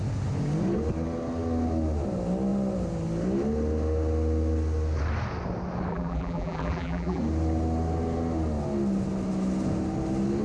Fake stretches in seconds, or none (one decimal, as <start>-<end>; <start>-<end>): 5.9-7.2